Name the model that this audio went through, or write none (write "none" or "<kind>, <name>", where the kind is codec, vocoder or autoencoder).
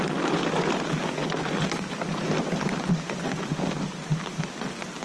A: none